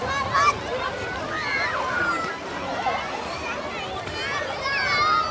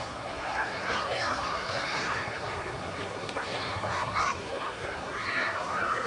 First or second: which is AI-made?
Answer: second